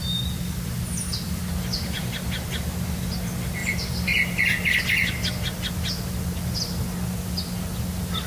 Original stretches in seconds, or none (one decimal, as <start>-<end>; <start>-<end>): 0.0-8.3